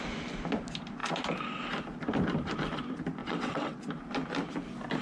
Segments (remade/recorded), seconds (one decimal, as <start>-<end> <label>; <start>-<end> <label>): 0.0-3.2 recorded; 3.2-3.8 remade; 3.8-5.0 recorded